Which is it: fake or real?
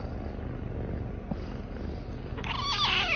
real